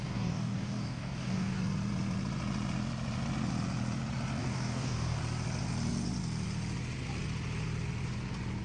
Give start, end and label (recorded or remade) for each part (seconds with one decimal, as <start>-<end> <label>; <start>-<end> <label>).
0.0-1.6 remade; 1.6-4.4 recorded; 4.4-5.2 remade; 5.2-8.6 recorded